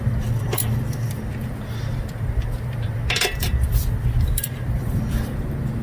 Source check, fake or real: fake